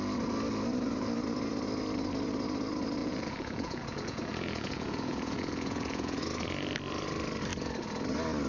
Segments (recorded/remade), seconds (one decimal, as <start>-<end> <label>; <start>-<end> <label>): 0.0-3.0 recorded; 3.0-6.2 remade; 6.2-8.5 recorded

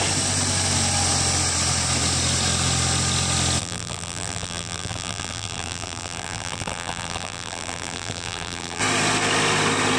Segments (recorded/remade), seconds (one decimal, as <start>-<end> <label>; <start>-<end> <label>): 0.0-3.6 recorded; 3.6-8.8 remade; 8.8-10.0 recorded

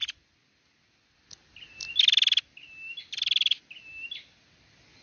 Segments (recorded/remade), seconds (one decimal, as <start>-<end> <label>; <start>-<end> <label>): 0.0-5.0 recorded

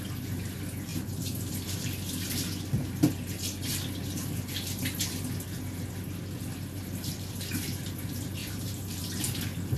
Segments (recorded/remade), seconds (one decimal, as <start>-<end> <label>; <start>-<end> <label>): 0.0-8.4 recorded; 8.4-9.1 remade; 9.1-9.8 recorded

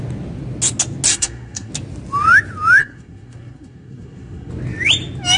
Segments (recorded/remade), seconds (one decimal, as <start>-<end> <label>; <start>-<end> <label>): 0.0-1.1 recorded; 1.1-1.7 remade; 1.7-2.8 recorded; 2.8-4.5 remade; 4.5-5.4 recorded

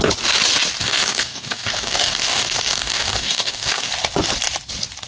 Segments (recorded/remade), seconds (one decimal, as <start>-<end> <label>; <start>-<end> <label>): 0.0-0.8 recorded; 0.8-3.9 remade; 3.9-5.1 recorded